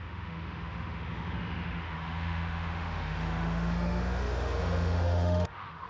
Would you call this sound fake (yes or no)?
yes